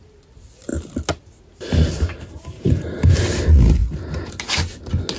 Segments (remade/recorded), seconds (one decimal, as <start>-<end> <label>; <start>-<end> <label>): 0.0-5.2 recorded